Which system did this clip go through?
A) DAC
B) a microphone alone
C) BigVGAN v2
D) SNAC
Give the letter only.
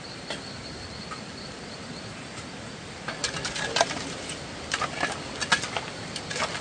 B